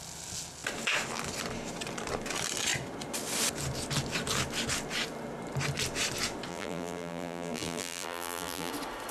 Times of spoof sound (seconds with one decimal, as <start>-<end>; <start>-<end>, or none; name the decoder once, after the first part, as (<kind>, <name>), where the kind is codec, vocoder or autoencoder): 6.5-8.7 (vocoder, BigVGAN v2)